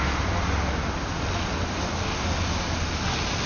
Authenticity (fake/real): real